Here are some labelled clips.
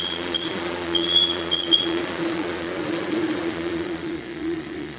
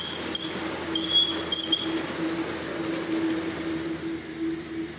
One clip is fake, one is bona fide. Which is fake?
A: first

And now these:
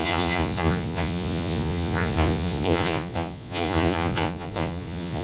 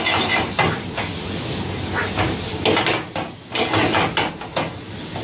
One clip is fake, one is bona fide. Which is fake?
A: first